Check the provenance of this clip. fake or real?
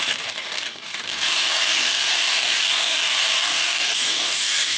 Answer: fake